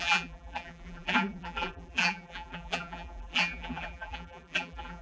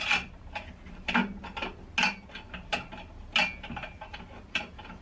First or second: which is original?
second